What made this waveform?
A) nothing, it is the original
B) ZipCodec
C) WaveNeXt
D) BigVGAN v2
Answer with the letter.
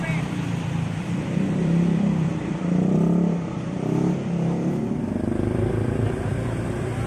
D